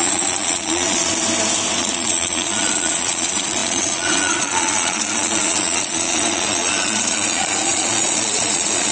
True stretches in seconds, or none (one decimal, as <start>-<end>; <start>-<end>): 1.1-1.8